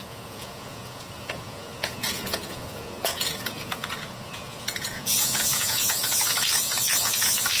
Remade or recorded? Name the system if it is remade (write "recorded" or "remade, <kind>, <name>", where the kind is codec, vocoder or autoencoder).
remade, vocoder, Vocos